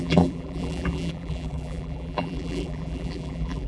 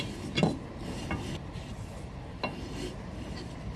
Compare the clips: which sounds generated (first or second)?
first